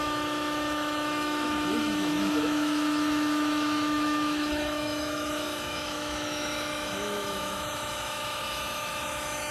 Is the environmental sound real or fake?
fake